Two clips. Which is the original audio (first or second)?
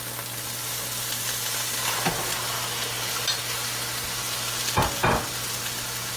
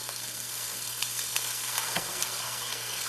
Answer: first